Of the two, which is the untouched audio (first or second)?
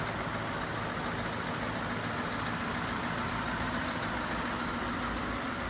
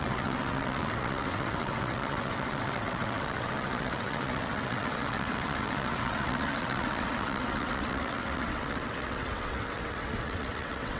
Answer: first